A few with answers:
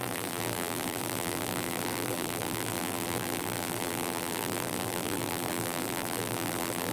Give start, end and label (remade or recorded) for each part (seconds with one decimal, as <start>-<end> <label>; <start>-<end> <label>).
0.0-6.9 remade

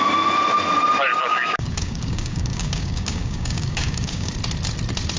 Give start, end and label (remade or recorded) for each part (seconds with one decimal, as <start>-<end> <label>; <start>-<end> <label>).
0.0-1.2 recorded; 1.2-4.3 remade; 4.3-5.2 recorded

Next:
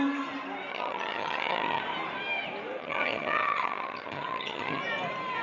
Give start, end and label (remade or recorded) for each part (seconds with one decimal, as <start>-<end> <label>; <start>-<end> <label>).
0.0-0.7 recorded; 0.7-1.8 remade; 1.8-2.8 recorded; 2.8-4.8 remade; 4.8-5.4 recorded